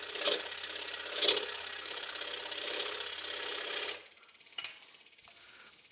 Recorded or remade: recorded